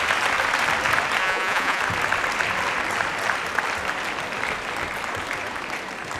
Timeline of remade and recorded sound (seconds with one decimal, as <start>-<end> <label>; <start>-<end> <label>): 0.0-1.2 recorded; 1.2-1.8 remade; 1.8-6.2 recorded